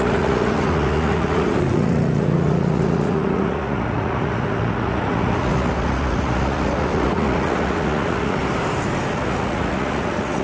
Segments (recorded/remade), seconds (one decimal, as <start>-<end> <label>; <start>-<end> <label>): 0.0-8.4 remade; 8.4-9.1 recorded; 9.1-10.4 remade